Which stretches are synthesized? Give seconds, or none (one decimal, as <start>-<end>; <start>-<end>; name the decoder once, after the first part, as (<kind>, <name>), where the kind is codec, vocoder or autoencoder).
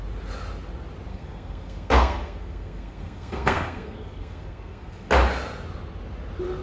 1.1-5.1 (codec, SNAC)